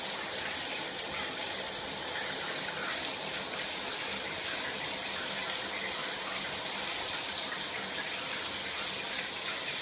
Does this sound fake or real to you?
real